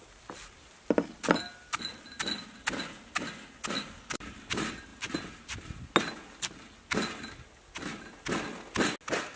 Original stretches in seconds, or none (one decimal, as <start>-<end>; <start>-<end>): 0.0-9.4